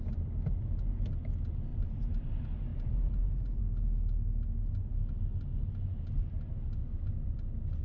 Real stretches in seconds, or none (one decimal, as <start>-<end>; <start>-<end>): 0.0-1.7; 2.3-2.7; 3.6-7.8

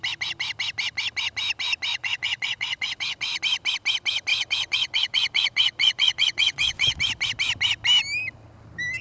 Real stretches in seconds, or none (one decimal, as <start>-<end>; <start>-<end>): 0.0-1.9; 3.4-4.3; 7.0-9.0

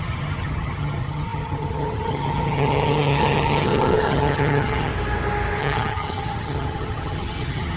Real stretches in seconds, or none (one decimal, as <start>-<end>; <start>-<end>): 4.9-5.6

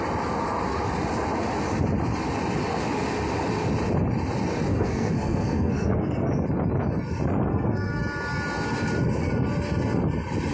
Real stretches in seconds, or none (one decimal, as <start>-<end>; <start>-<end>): 0.0-4.7; 6.3-7.5; 8.0-10.5

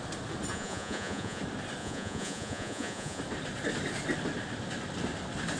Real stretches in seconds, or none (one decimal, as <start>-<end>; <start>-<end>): 0.0-0.5; 1.4-1.8; 3.2-5.6